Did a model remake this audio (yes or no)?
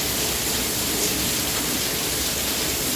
no